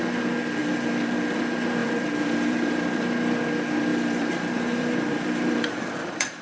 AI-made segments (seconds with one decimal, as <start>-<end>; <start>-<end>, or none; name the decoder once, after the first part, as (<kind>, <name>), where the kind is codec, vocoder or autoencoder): 0.6-1.4 (vocoder, BigVGAN v2); 1.8-3.0; 3.9-6.4

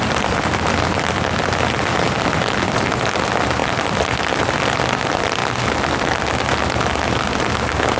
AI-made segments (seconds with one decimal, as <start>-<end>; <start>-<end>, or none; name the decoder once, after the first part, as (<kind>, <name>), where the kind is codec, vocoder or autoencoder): none

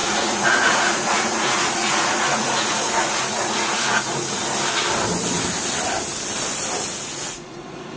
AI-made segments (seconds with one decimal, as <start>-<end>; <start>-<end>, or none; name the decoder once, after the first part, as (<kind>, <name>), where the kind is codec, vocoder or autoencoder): 0.0-4.4 (vocoder, Vocos); 6.9-8.0

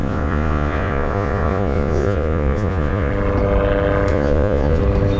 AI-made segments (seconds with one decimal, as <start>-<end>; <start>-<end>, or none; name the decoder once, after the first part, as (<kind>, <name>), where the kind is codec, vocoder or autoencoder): 0.0-3.1 (vocoder, Vocos); 4.1-4.8